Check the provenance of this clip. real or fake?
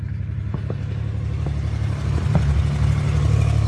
real